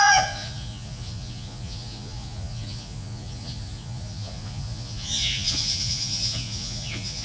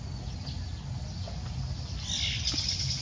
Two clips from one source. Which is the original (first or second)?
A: second